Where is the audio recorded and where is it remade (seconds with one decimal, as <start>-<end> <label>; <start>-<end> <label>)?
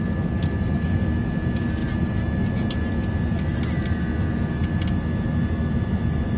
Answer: 0.0-6.4 recorded